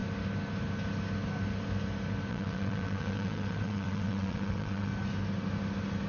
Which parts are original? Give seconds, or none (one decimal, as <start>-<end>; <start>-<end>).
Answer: 0.0-2.3; 4.9-6.1